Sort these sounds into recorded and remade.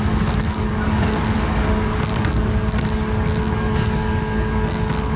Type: remade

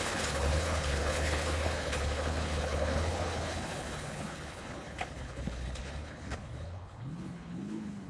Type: remade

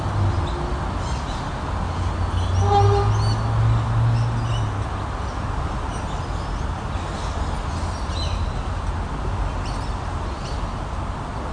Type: recorded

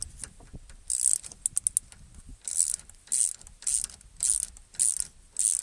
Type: recorded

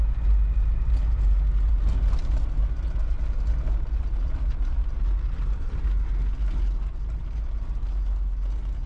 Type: recorded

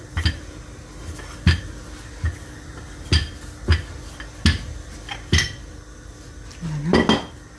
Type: recorded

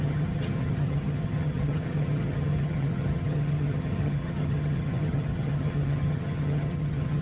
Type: remade